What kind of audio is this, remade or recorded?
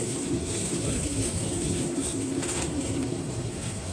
remade